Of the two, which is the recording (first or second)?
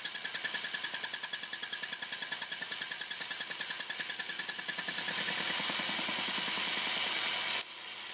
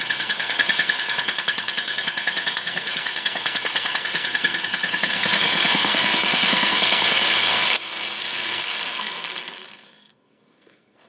first